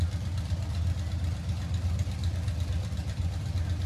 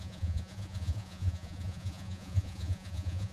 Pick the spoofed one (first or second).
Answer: second